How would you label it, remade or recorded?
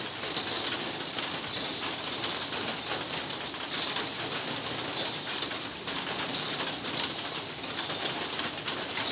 recorded